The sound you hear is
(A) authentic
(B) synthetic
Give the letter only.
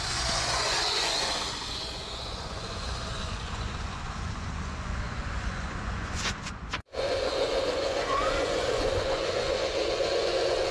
B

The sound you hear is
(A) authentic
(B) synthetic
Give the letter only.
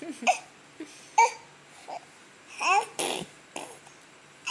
A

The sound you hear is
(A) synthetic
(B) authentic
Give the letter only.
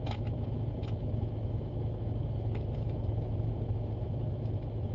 A